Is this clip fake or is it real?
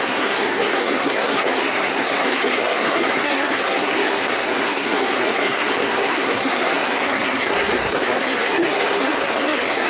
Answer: fake